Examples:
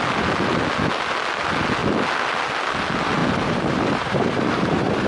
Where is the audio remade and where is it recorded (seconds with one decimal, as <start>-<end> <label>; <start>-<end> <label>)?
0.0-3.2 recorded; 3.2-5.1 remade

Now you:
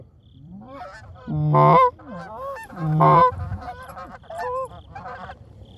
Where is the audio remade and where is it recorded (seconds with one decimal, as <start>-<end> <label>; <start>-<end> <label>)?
0.0-0.9 remade; 0.9-2.7 recorded; 2.7-5.8 remade

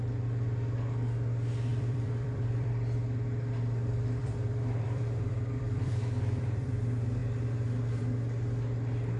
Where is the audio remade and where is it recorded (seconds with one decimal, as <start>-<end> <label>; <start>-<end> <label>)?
0.0-1.7 recorded; 1.7-2.7 remade; 2.7-4.2 recorded; 4.2-6.8 remade; 6.8-9.2 recorded